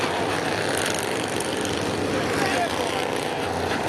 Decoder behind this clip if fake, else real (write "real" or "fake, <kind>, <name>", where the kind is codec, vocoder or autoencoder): real